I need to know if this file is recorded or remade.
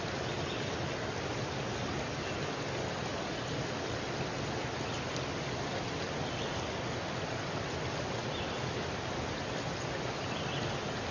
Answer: recorded